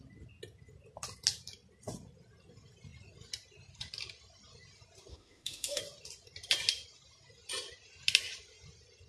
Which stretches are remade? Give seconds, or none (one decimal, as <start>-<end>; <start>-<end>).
5.1-5.8